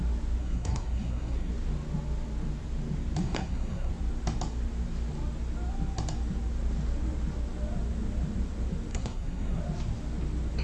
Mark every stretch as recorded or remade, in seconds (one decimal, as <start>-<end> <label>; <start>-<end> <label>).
0.0-0.4 recorded; 0.4-1.5 remade; 1.5-3.2 recorded; 3.2-3.9 remade; 3.9-8.9 recorded; 8.9-9.6 remade; 9.6-10.6 recorded